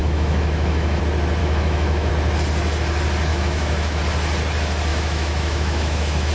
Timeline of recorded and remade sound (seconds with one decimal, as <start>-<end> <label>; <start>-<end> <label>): 0.0-1.0 remade; 1.0-1.4 recorded; 1.4-2.1 remade; 2.1-3.3 recorded; 3.3-4.0 remade; 4.0-4.9 recorded; 4.9-6.3 remade